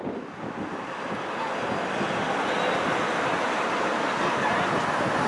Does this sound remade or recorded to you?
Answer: recorded